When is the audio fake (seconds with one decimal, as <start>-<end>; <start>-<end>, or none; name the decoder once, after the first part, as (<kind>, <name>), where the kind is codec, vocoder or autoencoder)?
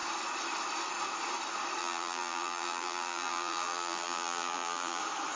1.8-5.0 (vocoder, BigVGAN v2)